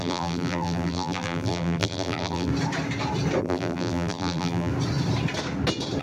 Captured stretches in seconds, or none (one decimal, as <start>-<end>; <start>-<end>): 2.5-3.4; 4.7-6.0